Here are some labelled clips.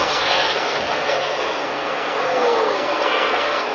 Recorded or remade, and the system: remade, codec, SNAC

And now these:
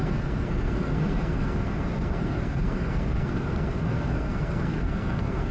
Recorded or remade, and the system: remade, codec, SNAC